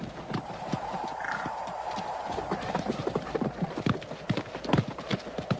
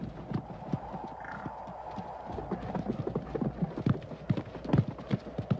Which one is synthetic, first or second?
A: first